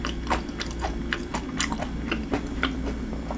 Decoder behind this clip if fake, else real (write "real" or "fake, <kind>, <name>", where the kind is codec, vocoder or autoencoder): real